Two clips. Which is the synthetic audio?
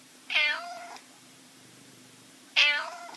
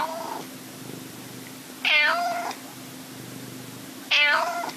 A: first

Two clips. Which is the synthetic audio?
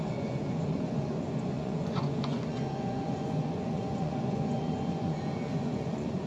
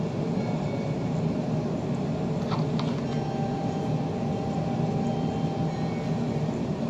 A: first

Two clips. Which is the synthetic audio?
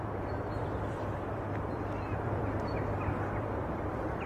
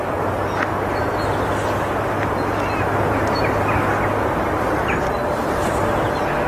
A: first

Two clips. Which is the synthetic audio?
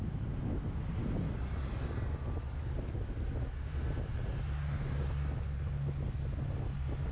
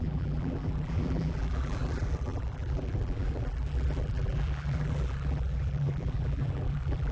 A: second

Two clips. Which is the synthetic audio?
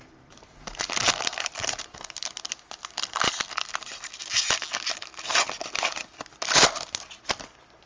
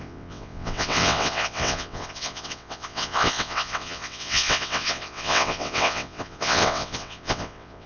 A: second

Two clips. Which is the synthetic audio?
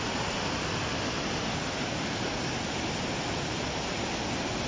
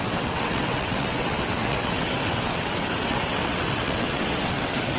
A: second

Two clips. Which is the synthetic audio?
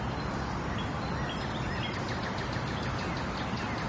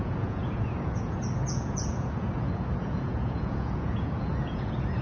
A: second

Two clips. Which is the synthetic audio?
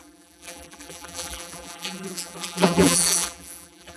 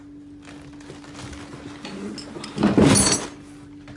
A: first